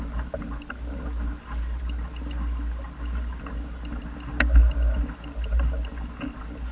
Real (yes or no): yes